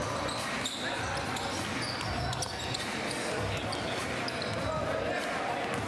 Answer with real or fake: real